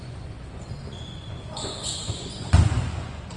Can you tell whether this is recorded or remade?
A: remade